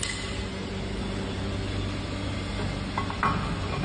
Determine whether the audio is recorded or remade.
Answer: recorded